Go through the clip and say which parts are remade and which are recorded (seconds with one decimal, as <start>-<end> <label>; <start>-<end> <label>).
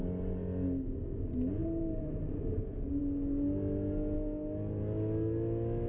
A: 0.0-1.6 recorded; 1.6-3.0 remade; 3.0-5.9 recorded